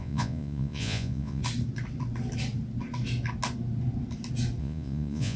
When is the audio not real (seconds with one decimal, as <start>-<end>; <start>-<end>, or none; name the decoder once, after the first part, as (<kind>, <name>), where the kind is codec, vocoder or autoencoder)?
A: 0.0-1.4 (vocoder, Vocos); 4.6-5.4